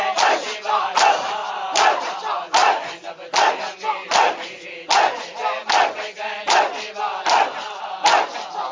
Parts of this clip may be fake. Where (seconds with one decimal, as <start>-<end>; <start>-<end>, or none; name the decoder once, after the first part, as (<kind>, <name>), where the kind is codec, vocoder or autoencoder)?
none